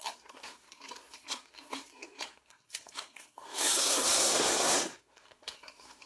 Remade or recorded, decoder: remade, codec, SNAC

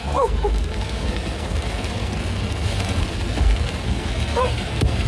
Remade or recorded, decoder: remade, codec, SNAC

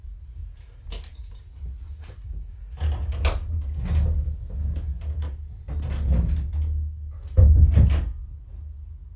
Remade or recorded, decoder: recorded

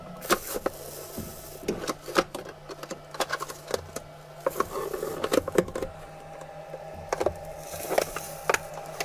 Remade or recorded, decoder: recorded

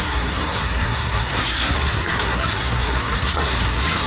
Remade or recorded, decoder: remade, codec, SNAC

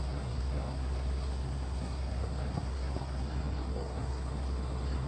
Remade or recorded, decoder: remade, codec, SNAC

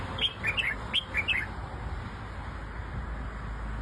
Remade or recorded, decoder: recorded